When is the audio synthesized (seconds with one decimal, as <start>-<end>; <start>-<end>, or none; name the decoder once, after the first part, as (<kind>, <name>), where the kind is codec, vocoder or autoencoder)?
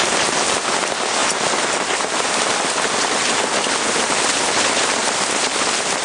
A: 5.0-6.0 (vocoder, BigVGAN v2)